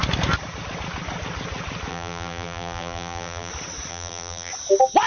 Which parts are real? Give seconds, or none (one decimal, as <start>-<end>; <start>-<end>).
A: 0.0-1.9; 3.5-3.9; 4.5-5.1